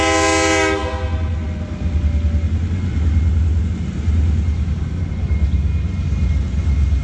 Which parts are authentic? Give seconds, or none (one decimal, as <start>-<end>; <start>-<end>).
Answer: 0.0-7.0